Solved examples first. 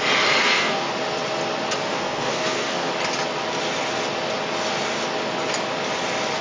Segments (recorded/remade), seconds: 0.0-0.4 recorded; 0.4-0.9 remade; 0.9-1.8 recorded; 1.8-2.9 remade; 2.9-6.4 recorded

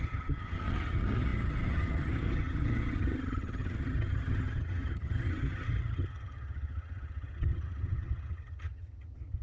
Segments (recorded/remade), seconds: 0.0-9.4 remade

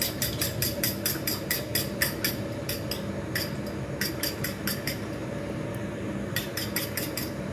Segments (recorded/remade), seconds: 0.0-1.7 remade; 1.7-4.1 recorded; 4.1-7.5 remade

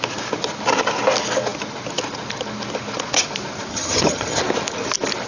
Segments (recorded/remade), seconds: 0.0-3.7 recorded; 3.7-4.4 remade; 4.4-5.3 recorded